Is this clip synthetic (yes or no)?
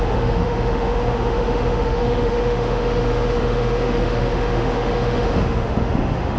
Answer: yes